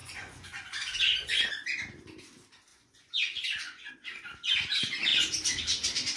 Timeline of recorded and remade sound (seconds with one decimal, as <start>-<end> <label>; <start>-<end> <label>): 0.0-1.5 remade; 1.5-2.7 recorded; 2.7-3.9 remade; 3.9-6.2 recorded